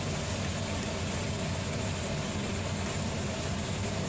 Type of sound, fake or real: real